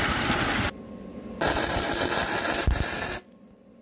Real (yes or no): yes